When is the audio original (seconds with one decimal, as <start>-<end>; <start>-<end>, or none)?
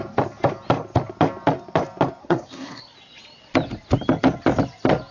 0.0-2.2; 2.8-5.1